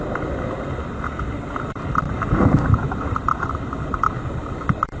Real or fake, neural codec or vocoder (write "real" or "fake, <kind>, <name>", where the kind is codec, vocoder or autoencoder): real